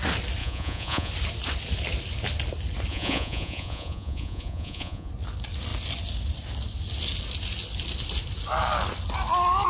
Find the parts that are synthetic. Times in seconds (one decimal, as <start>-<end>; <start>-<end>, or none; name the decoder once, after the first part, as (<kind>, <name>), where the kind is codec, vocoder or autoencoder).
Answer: 0.4-1.1 (vocoder, Vocos); 2.9-5.1